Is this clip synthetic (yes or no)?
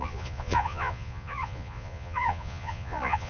yes